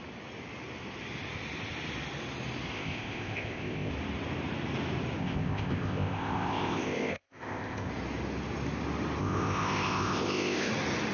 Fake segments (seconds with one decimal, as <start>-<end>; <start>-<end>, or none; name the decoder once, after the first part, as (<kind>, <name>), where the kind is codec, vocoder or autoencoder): 2.7-3.9 (codec, ZipCodec); 5.2-7.9; 9.2-10.7